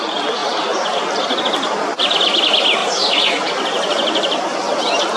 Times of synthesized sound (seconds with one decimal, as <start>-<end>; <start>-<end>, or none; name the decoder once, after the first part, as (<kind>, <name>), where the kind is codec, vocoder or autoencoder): 0.4-2.4 (vocoder, BigVGAN v2); 2.8-4.8